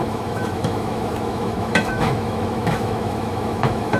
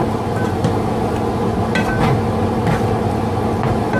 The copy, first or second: first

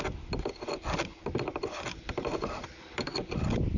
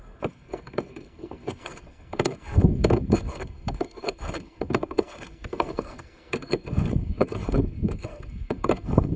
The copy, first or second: second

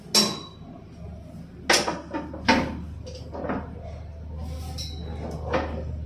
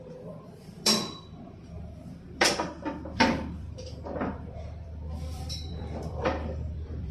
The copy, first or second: second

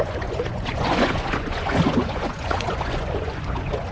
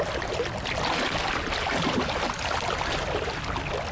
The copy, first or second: first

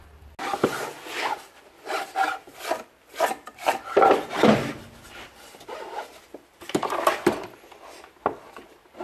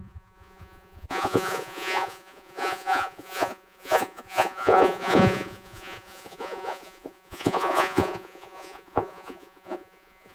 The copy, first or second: second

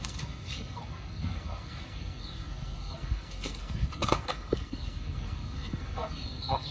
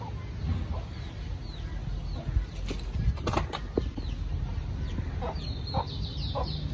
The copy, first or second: first